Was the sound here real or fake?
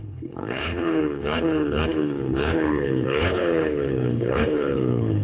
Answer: fake